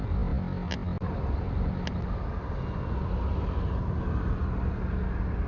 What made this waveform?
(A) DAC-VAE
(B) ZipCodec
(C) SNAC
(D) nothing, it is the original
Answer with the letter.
D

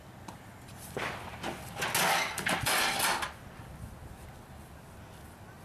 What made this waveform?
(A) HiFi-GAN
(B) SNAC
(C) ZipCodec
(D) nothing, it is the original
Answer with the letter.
D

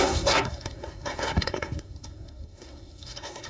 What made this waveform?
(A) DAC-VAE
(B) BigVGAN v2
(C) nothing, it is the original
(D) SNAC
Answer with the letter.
D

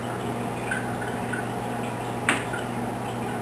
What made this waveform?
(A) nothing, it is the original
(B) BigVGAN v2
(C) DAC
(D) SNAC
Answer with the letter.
A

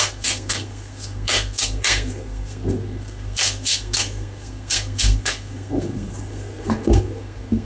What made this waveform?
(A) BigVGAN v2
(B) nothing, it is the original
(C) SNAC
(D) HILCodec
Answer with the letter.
C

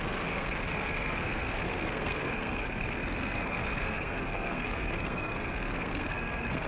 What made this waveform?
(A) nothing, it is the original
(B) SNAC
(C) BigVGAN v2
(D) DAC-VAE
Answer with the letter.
B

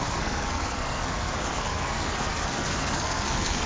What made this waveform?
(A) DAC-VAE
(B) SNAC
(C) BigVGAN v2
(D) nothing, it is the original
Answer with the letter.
B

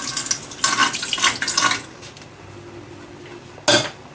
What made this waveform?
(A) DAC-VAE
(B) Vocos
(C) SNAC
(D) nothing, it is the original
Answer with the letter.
D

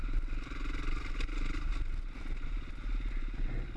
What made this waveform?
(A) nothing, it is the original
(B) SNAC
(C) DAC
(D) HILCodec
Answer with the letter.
A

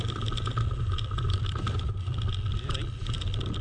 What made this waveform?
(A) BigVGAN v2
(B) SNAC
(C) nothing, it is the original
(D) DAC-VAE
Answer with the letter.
C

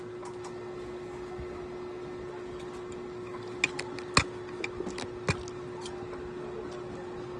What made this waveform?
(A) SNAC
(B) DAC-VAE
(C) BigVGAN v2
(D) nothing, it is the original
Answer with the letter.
D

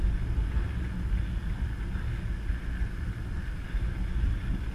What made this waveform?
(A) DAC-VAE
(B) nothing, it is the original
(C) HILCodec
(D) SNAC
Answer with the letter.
B